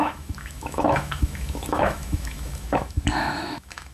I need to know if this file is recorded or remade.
remade